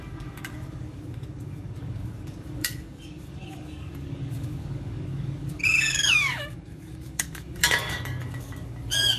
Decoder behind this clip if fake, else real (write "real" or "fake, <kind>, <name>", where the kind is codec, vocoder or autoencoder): fake, codec, DAC